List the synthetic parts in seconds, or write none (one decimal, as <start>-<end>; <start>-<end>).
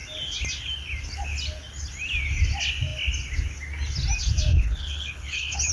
4.5-5.7